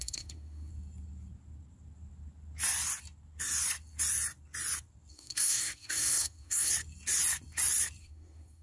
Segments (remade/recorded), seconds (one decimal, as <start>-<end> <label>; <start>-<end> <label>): 0.0-0.7 remade; 0.7-5.1 recorded; 5.1-6.7 remade; 6.7-8.0 recorded; 8.0-8.6 remade